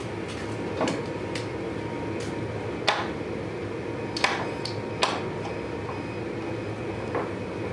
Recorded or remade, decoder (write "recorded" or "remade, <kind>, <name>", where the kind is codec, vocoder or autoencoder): recorded